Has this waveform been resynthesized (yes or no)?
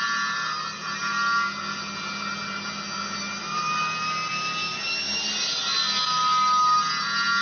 no